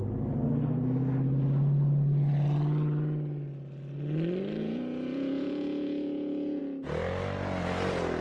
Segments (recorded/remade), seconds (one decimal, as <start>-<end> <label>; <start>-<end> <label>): 0.0-4.6 recorded; 4.6-6.6 remade; 6.6-8.2 recorded